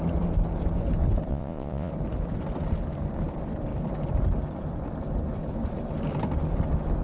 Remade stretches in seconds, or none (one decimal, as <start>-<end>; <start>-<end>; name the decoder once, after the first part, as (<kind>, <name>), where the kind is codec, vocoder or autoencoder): 1.3-1.9 (vocoder, Vocos)